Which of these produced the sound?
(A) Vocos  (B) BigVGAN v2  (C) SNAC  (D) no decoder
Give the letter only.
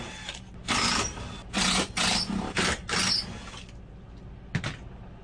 D